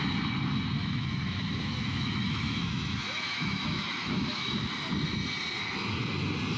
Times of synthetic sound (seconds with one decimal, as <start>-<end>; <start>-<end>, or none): 0.8-4.7